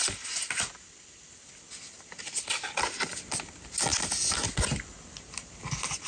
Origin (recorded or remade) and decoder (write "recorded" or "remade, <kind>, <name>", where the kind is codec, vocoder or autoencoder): recorded